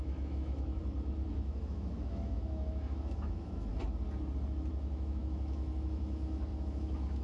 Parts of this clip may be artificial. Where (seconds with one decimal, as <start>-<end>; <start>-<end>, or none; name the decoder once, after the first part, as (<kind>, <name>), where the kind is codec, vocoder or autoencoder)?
0.0-0.8 (autoencoder, DAC-VAE); 1.3-3.7; 4.7-7.2